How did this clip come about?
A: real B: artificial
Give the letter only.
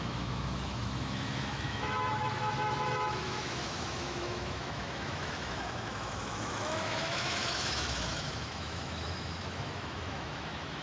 B